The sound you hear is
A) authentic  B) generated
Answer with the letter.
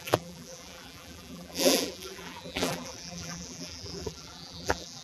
B